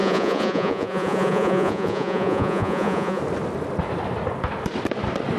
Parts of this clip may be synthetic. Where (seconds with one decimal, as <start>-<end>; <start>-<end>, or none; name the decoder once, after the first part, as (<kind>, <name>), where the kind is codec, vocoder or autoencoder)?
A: 0.0-3.2 (vocoder, Vocos)